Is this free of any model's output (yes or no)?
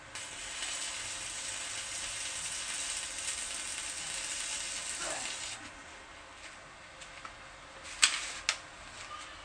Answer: yes